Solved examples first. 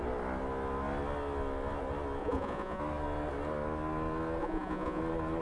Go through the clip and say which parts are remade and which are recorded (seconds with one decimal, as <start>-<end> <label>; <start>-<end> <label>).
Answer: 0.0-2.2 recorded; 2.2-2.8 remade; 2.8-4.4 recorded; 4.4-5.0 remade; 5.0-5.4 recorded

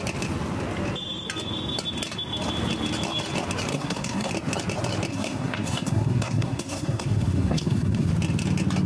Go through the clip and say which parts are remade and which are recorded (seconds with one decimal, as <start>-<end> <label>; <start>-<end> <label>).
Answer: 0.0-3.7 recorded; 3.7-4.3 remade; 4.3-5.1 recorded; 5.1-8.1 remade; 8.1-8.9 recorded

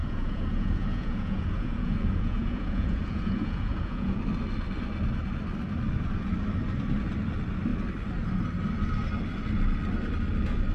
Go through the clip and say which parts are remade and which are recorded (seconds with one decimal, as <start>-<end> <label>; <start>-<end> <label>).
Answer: 0.0-4.2 remade; 4.2-10.7 recorded

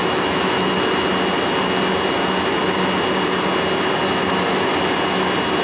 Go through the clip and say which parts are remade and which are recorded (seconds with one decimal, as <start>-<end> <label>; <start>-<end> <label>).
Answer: 0.0-0.7 remade; 0.7-4.2 recorded; 4.2-4.7 remade; 4.7-5.6 recorded

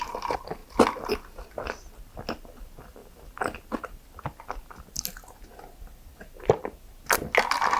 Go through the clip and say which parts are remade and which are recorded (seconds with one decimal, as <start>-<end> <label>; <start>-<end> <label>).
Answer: 0.0-7.8 recorded

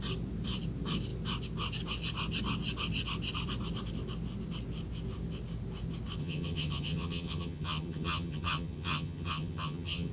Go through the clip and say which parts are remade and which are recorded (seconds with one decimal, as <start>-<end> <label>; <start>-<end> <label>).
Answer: 0.0-6.2 recorded; 6.2-10.1 remade

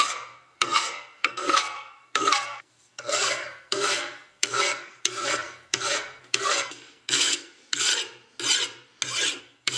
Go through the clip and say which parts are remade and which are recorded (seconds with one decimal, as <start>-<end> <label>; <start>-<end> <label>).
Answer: 0.0-7.9 remade; 7.9-9.4 recorded; 9.4-9.8 remade